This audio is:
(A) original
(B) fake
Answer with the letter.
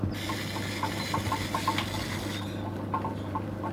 A